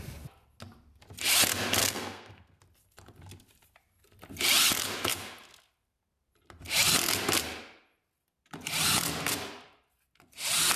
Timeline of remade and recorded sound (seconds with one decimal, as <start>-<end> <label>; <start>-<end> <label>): 0.0-1.8 recorded; 1.8-2.6 remade; 2.6-10.8 recorded